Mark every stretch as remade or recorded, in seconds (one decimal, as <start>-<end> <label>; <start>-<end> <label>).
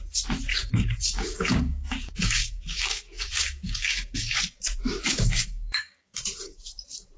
0.0-0.5 recorded; 0.5-4.4 remade; 4.4-5.1 recorded; 5.1-6.6 remade; 6.6-7.2 recorded